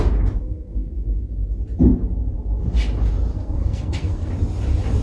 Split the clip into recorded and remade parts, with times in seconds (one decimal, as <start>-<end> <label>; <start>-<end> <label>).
0.0-0.4 recorded; 0.4-1.2 remade; 1.2-3.3 recorded; 3.3-4.3 remade; 4.3-5.0 recorded